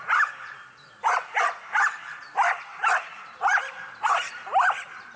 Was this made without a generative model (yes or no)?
yes